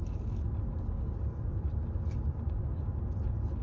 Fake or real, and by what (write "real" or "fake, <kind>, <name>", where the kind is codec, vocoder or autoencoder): real